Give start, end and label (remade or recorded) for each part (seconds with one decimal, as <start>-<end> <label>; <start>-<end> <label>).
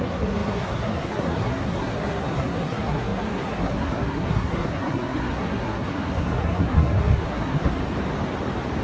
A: 0.0-7.8 remade; 7.8-8.8 recorded